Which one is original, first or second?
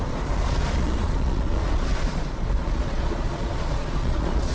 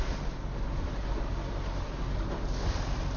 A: second